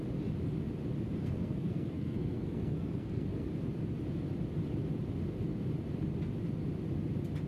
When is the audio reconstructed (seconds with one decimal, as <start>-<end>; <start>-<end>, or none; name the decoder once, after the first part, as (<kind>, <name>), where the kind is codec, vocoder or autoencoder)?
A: 1.2-3.5 (codec, SNAC)